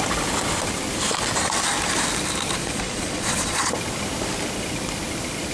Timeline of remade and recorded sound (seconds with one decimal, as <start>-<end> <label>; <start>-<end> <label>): 0.0-2.6 recorded; 2.6-3.7 remade; 3.7-5.5 recorded